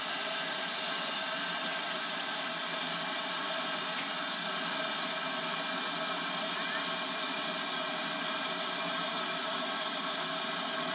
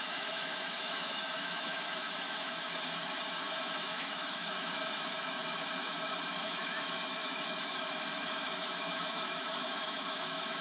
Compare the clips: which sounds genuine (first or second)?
first